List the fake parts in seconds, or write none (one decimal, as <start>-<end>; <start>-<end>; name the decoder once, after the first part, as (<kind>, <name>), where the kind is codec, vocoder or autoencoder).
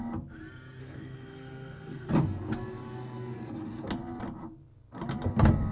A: 0.8-2.1 (codec, SNAC)